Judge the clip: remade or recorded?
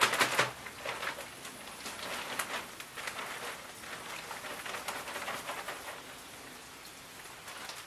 recorded